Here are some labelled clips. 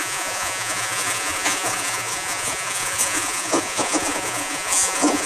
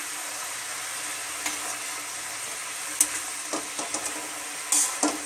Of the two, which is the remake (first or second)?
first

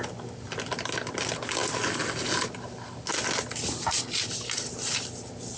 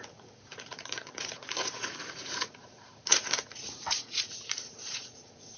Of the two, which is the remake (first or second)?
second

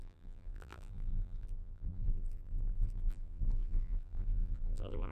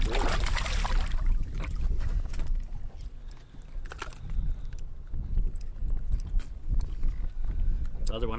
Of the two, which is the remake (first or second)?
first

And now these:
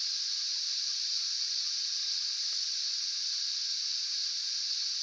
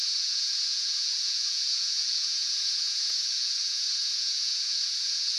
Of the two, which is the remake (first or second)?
second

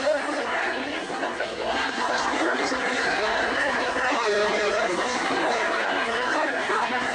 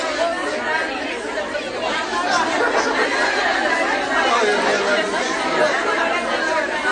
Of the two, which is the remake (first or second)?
first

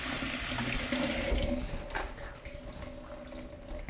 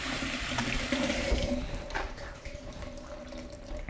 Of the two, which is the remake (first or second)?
second